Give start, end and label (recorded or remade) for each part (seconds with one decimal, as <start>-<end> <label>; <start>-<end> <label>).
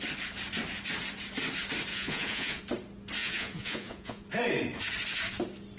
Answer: 0.0-1.9 recorded; 1.9-2.6 remade; 2.6-3.2 recorded; 3.2-4.2 remade; 4.2-5.8 recorded